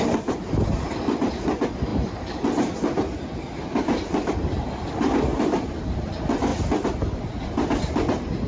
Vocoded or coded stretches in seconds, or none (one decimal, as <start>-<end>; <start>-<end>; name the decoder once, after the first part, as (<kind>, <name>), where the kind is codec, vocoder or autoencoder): none